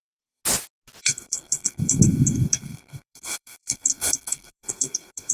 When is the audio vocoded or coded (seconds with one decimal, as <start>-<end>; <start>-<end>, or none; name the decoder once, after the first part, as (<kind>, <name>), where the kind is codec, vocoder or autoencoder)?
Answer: 0.0-0.4 (codec, SNAC); 1.0-5.3